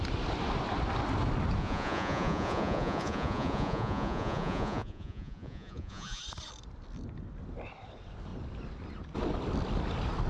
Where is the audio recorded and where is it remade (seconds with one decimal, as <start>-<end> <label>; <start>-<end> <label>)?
0.0-1.6 recorded; 1.6-6.2 remade; 6.2-10.3 recorded